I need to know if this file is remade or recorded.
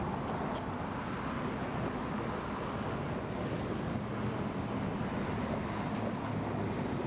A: recorded